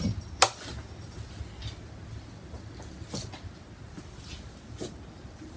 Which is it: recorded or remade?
recorded